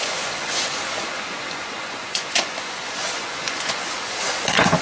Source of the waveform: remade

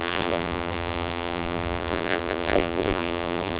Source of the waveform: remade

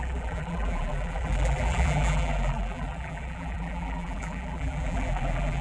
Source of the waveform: remade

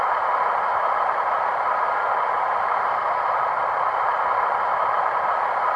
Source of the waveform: recorded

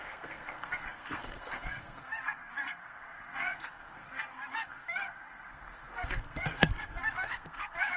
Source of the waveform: remade